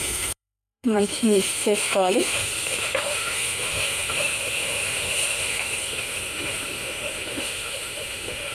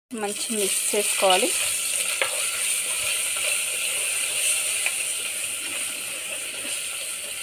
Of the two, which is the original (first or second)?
second